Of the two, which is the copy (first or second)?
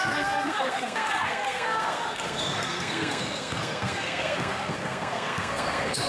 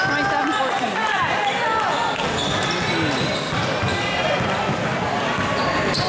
first